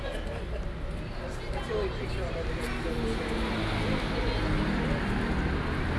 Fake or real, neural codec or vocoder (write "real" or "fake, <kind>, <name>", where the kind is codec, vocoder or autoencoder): real